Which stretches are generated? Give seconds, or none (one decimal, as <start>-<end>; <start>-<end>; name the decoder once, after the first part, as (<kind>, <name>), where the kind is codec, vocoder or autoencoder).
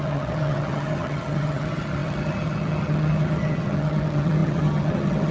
0.0-5.3 (vocoder, HiFi-GAN)